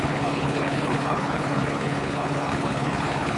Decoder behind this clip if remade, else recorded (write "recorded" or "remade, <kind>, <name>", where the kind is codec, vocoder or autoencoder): remade, codec, HILCodec